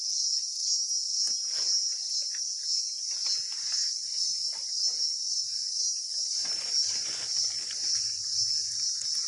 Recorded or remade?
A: recorded